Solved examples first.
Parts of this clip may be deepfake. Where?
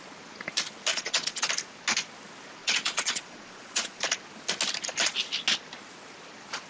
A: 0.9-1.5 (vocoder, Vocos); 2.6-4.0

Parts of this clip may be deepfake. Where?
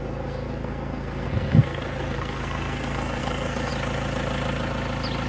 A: 0.0-3.7 (codec, SNAC)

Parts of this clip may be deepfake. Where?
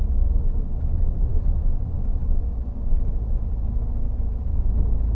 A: none